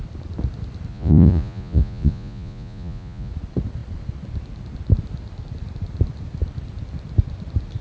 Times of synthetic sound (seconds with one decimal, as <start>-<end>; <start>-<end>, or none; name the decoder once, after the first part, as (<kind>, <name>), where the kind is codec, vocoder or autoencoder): 0.9-3.3 (vocoder, Vocos)